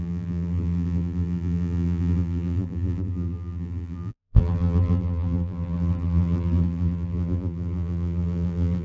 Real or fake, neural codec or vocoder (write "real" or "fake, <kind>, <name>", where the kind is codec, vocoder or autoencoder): fake, vocoder, BigVGAN v2